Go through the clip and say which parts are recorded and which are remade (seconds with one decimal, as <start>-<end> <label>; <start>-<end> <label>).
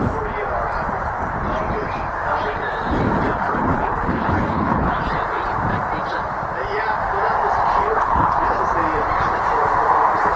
0.0-3.4 recorded; 3.4-5.0 remade; 5.0-7.8 recorded; 7.8-8.6 remade; 8.6-10.4 recorded